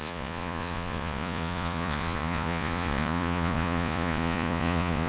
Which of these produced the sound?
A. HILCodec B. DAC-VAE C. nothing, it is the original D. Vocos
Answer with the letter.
D